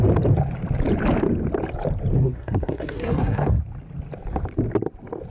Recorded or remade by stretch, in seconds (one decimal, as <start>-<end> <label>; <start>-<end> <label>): 0.0-2.2 recorded; 2.2-3.6 remade; 3.6-5.3 recorded